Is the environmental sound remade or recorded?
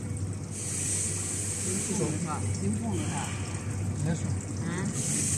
recorded